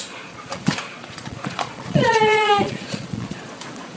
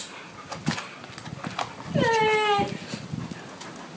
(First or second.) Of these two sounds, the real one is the second